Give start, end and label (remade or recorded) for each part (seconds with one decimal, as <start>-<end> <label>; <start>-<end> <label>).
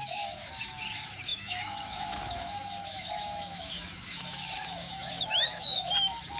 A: 0.0-6.4 remade